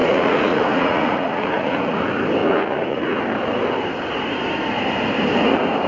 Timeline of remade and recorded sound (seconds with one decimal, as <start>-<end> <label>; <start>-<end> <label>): 0.0-2.0 remade; 2.0-2.4 recorded; 2.4-3.2 remade; 3.2-5.9 recorded